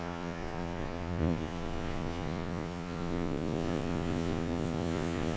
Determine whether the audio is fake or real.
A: fake